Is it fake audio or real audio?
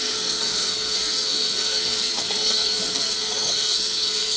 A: fake